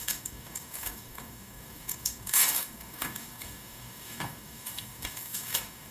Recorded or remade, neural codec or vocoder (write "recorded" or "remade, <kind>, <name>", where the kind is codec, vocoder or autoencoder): remade, codec, DAC